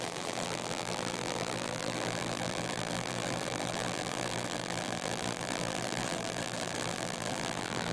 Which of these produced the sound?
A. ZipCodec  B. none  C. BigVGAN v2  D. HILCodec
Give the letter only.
C